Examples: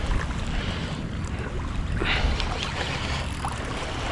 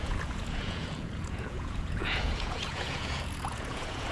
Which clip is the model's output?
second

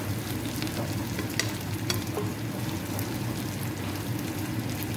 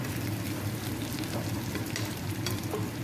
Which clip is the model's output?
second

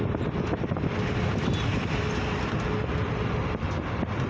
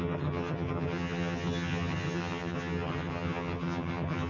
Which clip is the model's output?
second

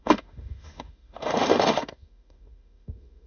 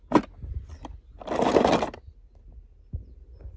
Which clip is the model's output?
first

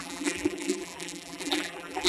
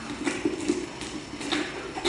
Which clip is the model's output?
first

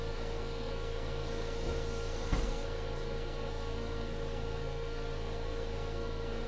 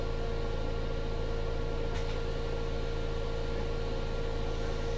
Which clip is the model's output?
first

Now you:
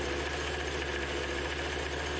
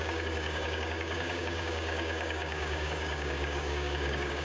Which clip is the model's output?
second